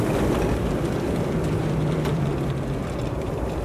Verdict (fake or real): fake